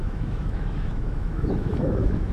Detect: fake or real fake